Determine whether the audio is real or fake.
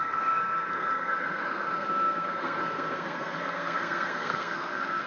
fake